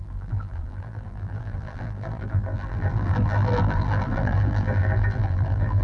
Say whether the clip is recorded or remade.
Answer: remade